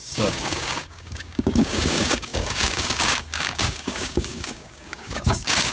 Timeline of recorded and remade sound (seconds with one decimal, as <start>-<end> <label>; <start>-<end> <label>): 0.0-5.7 remade